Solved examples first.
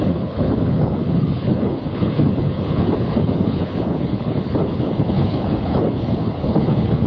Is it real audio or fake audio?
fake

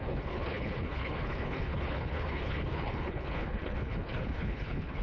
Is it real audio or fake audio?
fake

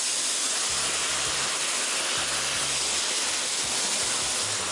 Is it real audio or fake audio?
real